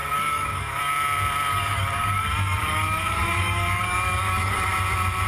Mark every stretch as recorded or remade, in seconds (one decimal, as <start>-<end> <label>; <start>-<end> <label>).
0.0-0.8 remade; 0.8-1.5 recorded; 1.5-4.7 remade; 4.7-5.3 recorded